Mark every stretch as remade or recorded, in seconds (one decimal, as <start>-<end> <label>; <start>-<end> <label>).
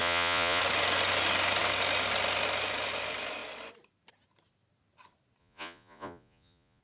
0.0-0.6 remade; 0.6-5.4 recorded; 5.4-6.8 remade